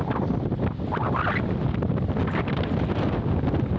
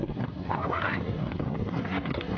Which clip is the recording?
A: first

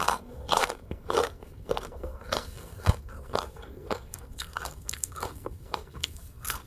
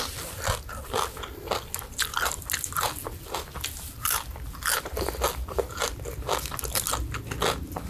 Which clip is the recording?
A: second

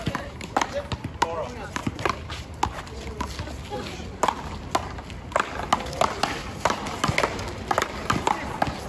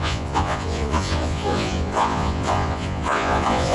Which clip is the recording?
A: first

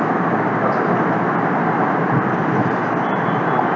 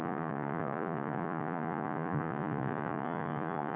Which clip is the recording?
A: first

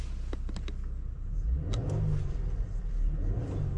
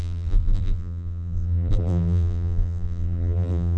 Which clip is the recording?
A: first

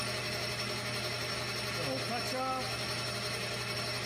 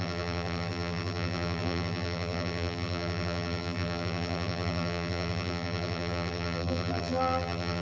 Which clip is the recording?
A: first